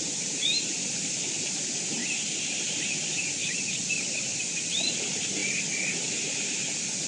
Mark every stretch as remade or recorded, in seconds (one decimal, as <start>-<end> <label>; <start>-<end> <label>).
0.0-2.0 recorded; 2.0-2.8 remade; 2.8-3.4 recorded; 3.4-4.4 remade; 4.4-7.1 recorded